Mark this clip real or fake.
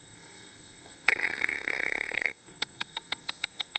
fake